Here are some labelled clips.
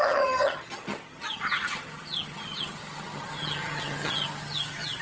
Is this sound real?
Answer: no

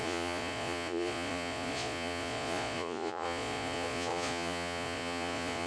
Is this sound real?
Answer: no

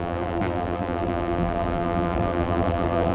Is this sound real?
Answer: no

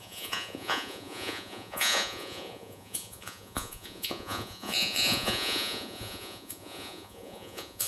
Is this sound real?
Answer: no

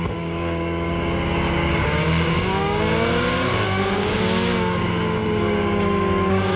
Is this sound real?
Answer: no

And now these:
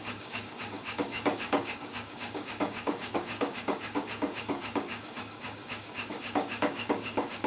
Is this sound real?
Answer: no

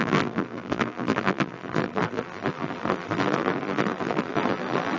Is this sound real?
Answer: no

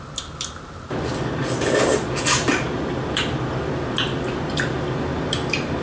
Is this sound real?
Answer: yes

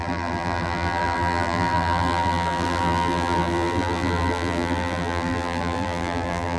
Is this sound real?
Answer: no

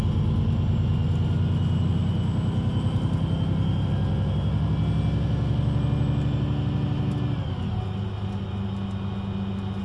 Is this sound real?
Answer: yes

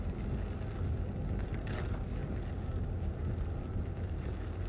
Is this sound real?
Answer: yes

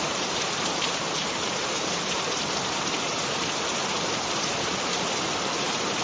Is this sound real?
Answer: no